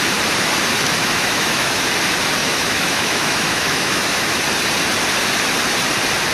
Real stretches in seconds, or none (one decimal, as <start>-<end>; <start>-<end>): 0.0-1.0; 1.9-2.4; 4.4-6.3